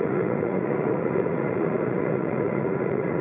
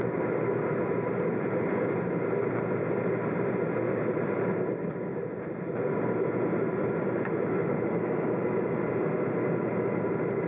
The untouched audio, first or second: second